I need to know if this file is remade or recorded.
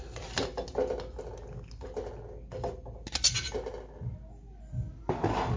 recorded